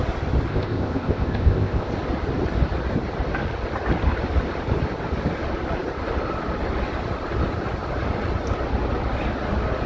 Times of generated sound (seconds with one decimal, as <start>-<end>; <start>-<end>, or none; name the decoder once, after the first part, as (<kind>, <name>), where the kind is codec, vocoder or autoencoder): 0.5-1.9 (codec, ZipCodec)